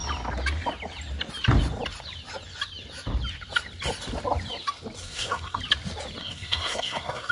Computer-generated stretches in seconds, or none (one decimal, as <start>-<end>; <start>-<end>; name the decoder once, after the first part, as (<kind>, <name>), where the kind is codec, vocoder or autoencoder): 5.0-5.6 (codec, SNAC); 6.2-7.3